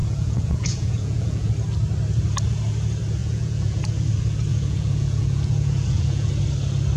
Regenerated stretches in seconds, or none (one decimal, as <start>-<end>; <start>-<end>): 0.0-1.5; 3.2-3.8; 4.5-6.3